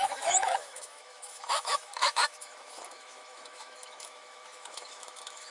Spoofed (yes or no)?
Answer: yes